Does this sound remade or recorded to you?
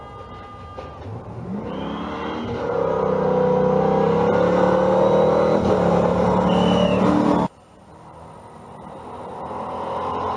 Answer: recorded